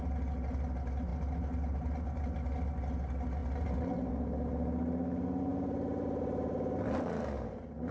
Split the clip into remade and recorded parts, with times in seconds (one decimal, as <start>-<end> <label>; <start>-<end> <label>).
0.0-5.5 recorded; 5.5-6.2 remade; 6.2-7.9 recorded